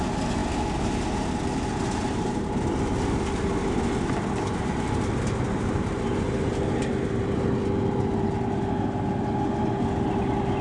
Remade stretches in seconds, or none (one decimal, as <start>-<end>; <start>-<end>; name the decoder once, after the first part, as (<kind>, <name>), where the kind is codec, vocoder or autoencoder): none